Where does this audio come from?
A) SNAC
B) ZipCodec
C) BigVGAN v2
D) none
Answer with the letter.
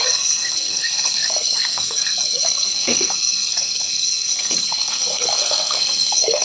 A